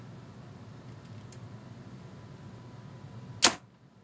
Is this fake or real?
real